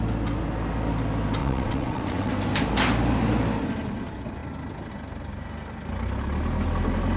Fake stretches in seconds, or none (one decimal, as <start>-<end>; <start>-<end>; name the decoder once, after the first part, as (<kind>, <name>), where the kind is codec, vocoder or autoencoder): 1.4-2.3 (vocoder, WaveNeXt)